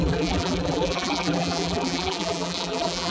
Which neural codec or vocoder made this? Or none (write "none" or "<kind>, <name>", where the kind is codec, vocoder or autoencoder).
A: vocoder, BigVGAN v2